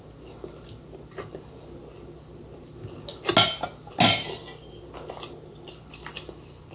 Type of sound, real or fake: real